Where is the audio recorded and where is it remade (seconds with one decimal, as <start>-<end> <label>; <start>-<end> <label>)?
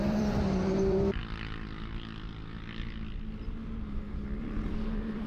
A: 0.0-1.2 remade; 1.2-4.4 recorded; 4.4-5.3 remade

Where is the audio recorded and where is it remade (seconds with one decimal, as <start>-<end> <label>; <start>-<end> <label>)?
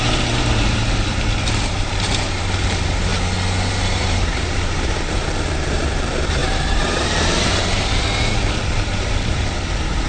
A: 0.0-3.1 remade; 3.1-3.7 recorded; 3.7-10.1 remade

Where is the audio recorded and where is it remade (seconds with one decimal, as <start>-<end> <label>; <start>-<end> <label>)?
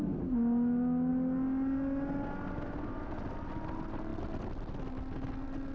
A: 0.0-4.1 recorded; 4.1-4.7 remade; 4.7-5.7 recorded